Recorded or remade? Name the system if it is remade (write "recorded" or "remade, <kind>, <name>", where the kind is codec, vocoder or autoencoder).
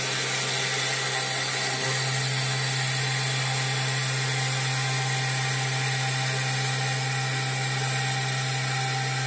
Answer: recorded